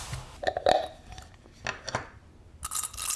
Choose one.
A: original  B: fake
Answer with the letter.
A